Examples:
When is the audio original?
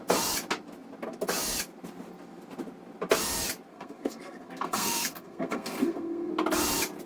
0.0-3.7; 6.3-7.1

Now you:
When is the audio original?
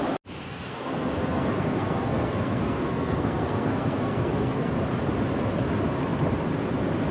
0.0-0.4; 4.7-7.1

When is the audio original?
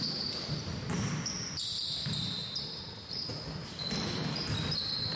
0.0-5.2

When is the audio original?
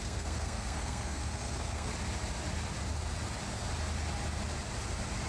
1.9-5.3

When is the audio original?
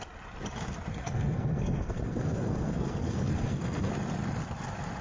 0.0-0.9; 3.9-5.0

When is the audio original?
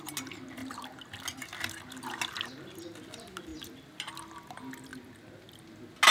0.0-6.1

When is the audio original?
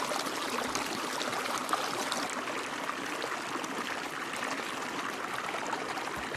0.0-6.4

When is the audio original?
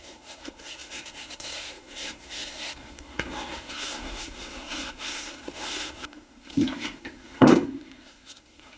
none